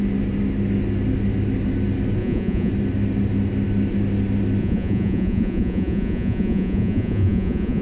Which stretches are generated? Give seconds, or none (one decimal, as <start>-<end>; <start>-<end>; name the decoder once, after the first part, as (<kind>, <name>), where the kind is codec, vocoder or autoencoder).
2.2-2.7 (vocoder, Vocos); 4.6-7.8